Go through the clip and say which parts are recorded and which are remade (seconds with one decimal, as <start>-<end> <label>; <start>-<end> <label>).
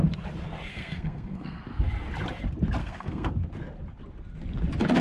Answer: 0.0-0.7 recorded; 0.7-1.6 remade; 1.6-2.8 recorded; 2.8-3.3 remade; 3.3-5.0 recorded